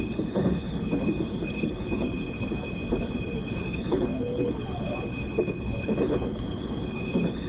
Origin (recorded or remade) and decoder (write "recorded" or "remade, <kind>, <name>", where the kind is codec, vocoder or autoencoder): remade, codec, HILCodec